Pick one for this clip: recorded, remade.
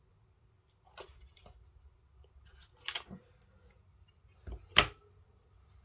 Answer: recorded